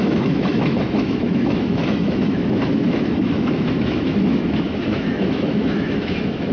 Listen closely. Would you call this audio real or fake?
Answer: fake